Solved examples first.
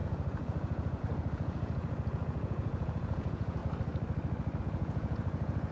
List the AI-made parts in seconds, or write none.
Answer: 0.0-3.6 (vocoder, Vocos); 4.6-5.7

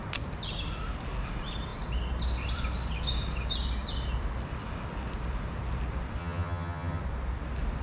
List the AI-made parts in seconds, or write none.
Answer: 6.2-7.0 (vocoder, HiFi-GAN)

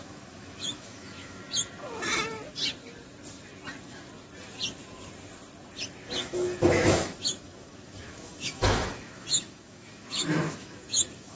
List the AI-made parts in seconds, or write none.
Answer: 0.0-1.4 (autoencoder, DAC-VAE); 6.2-11.4

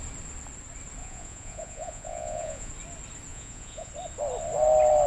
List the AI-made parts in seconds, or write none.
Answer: 1.0-2.7 (vocoder, Vocos); 3.3-3.9

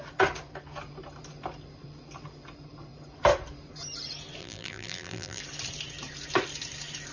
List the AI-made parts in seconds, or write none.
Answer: 4.4-5.4 (vocoder, BigVGAN v2)

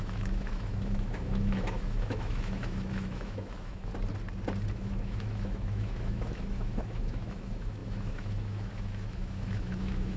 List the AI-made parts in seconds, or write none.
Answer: 0.0-3.9 (autoencoder, DAC-VAE); 4.7-10.2